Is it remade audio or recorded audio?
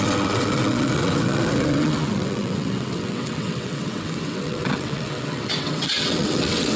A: remade